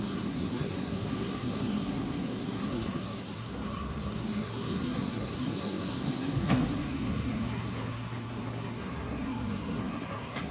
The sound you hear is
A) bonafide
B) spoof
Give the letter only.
B